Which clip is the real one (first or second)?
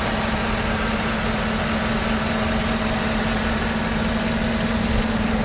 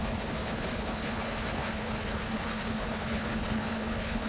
first